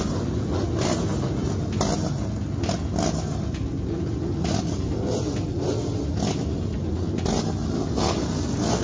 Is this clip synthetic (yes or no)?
no